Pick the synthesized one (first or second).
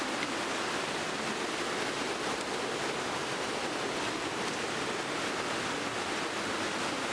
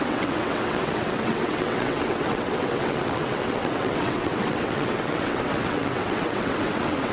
second